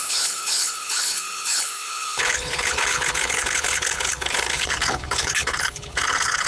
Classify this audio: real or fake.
fake